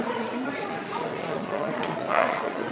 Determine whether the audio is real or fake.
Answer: fake